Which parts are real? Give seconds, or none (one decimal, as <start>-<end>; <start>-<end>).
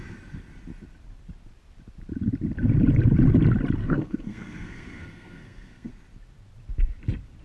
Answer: 0.0-3.8; 5.9-7.4